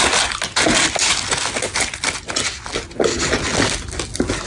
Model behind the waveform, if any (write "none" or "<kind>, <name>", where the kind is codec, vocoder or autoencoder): none